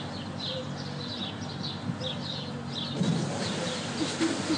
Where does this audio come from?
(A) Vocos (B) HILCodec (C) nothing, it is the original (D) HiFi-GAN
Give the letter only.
C